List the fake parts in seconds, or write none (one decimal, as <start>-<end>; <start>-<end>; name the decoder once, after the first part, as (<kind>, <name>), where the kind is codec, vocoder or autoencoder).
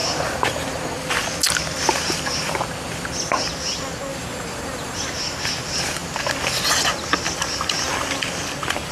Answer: 4.1-5.0 (vocoder, BigVGAN v2)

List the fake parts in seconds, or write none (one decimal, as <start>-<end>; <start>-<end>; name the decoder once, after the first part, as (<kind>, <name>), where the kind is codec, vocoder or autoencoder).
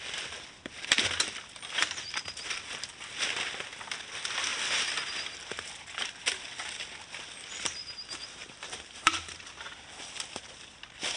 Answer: 4.5-5.0 (vocoder, BigVGAN v2); 7.8-9.3